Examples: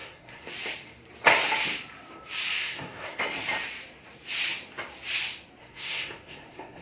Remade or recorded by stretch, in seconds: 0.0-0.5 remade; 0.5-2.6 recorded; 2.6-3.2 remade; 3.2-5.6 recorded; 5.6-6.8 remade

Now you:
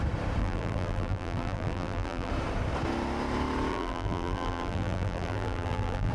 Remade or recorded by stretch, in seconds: 0.0-0.4 recorded; 0.4-2.3 remade; 2.3-3.7 recorded; 3.7-6.1 remade